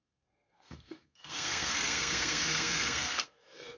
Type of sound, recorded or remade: remade